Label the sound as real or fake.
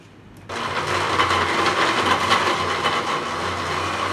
real